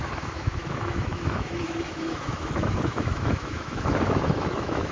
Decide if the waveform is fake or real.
fake